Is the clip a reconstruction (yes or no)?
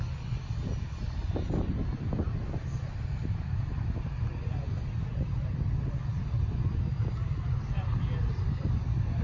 no